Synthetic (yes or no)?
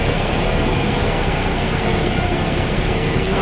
yes